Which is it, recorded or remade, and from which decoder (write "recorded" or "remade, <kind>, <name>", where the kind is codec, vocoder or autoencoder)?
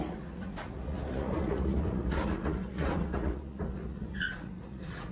remade, vocoder, Vocos